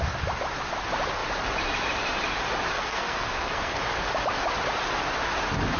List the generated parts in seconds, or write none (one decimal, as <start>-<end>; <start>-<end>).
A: 2.7-3.8